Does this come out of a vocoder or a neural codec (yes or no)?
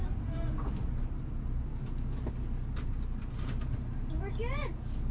no